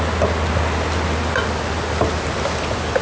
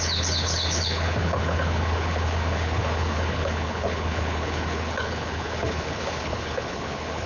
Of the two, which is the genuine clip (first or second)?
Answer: first